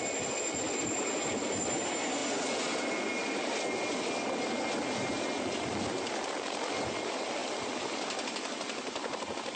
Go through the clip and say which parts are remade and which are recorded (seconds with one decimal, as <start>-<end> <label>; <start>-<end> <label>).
0.0-9.6 recorded